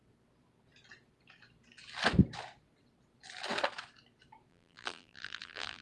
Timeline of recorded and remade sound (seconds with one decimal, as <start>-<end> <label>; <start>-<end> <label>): 0.0-4.5 recorded; 4.5-5.8 remade